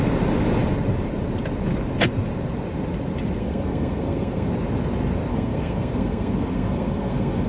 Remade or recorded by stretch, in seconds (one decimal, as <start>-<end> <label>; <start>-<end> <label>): 0.0-3.4 recorded; 3.4-4.5 remade; 4.5-5.3 recorded; 5.3-7.5 remade